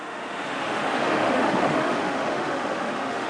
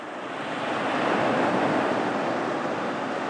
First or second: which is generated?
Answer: first